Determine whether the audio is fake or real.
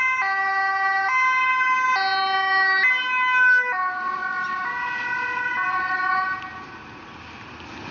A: real